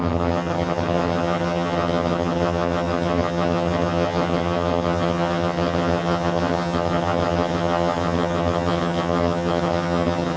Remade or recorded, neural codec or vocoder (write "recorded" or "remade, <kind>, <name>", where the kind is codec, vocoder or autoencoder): remade, vocoder, HiFi-GAN